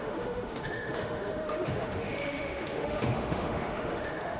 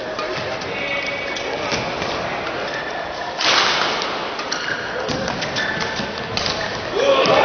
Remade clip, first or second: first